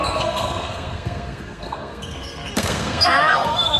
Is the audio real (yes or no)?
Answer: no